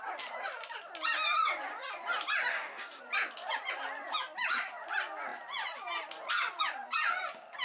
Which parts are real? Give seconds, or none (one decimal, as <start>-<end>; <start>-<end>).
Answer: 0.0-2.5; 3.0-7.6